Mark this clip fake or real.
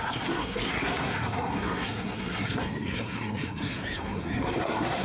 fake